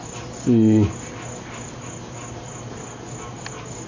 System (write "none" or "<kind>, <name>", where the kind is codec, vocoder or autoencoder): none